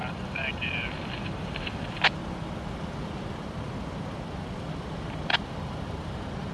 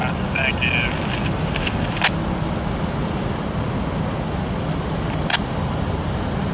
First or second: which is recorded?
second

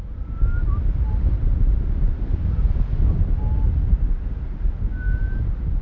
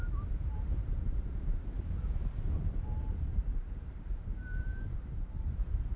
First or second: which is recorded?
first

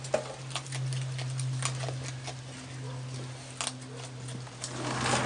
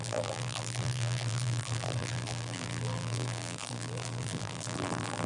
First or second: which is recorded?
first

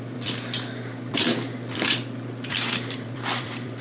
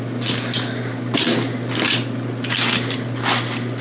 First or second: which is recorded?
second